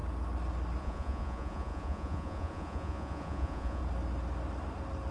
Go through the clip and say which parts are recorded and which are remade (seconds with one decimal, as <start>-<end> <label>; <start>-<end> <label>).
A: 0.0-0.8 recorded; 0.8-3.8 remade; 3.8-5.1 recorded